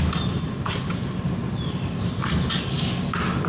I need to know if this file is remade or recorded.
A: recorded